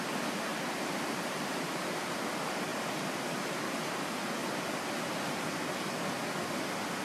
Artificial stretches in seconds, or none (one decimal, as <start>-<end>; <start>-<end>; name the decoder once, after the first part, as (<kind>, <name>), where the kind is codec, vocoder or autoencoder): 0.5-2.0 (vocoder, BigVGAN v2); 2.7-3.7